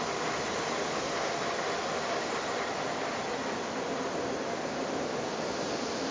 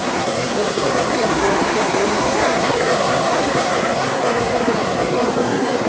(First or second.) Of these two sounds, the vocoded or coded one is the second